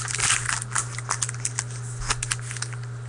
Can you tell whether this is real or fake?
real